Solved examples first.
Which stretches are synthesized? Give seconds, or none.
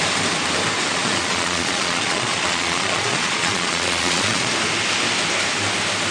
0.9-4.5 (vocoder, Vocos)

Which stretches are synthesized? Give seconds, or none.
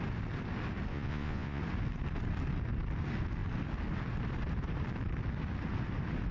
0.9-1.6 (vocoder, Vocos)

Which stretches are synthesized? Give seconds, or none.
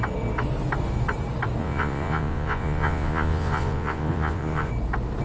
1.6-4.7 (vocoder, Vocos)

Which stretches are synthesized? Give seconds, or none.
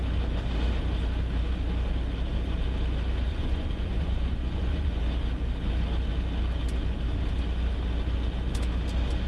3.3-5.0 (vocoder, Vocos)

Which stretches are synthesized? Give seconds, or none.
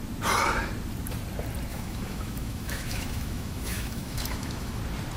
1.7-4.8 (autoencoder, DAC-VAE)